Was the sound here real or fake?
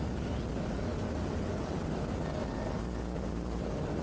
real